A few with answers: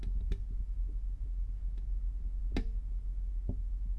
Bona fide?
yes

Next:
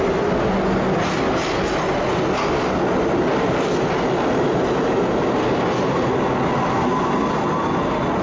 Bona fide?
yes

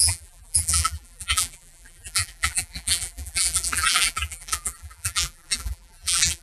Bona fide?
no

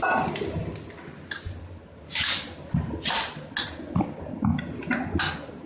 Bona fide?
yes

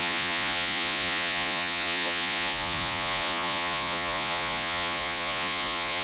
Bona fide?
no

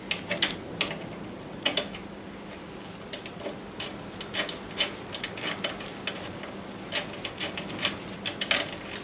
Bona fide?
yes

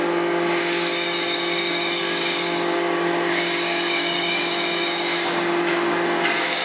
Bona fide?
no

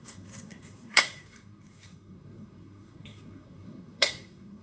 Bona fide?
no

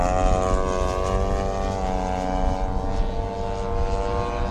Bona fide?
yes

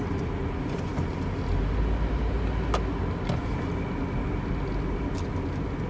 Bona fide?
yes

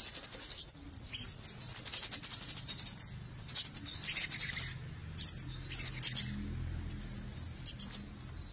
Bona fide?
yes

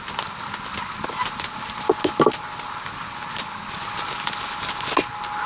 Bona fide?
yes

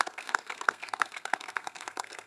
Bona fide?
no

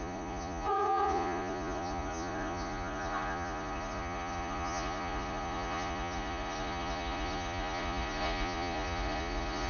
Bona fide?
no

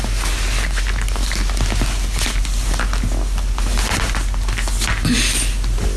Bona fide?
yes